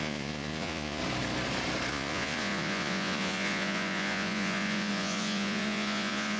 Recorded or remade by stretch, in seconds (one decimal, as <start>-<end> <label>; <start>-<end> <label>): 0.0-1.0 remade; 1.0-1.9 recorded; 1.9-6.4 remade